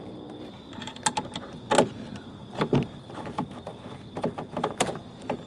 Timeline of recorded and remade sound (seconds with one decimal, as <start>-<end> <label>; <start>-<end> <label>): 0.0-0.9 remade; 0.9-2.4 recorded; 2.4-3.7 remade; 3.7-4.2 recorded; 4.2-5.5 remade